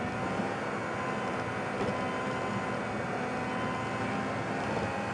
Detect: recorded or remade recorded